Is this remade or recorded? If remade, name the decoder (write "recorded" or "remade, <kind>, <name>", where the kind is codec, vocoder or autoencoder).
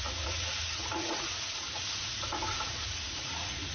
remade, vocoder, Vocos